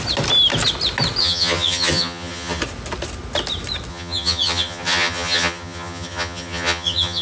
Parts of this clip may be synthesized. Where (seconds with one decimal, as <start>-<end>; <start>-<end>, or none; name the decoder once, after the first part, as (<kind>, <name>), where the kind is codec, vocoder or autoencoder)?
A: 1.2-2.6 (vocoder, HiFi-GAN); 3.9-7.2